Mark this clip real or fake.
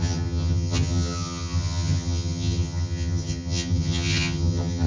fake